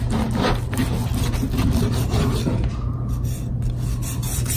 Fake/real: real